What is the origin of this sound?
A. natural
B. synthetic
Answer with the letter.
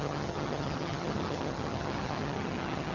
B